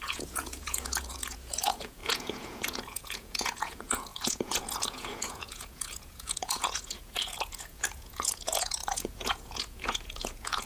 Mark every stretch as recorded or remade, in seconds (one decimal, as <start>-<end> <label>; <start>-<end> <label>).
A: 0.0-10.7 remade